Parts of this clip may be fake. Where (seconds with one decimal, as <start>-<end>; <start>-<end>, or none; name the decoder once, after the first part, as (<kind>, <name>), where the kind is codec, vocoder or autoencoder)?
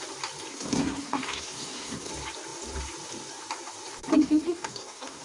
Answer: 0.5-2.1 (codec, SNAC); 4.2-5.2